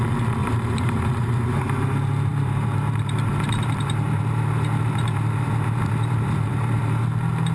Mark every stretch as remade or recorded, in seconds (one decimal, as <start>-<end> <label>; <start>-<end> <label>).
0.0-0.4 recorded; 0.4-1.6 remade; 1.6-2.3 recorded; 2.3-6.8 remade; 6.8-7.5 recorded